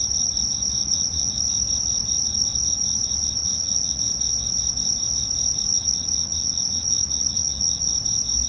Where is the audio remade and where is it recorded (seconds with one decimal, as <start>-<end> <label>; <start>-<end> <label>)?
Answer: 0.0-0.8 recorded; 0.8-1.3 remade; 1.3-3.4 recorded; 3.4-4.0 remade; 4.0-5.7 recorded; 5.7-7.9 remade; 7.9-8.5 recorded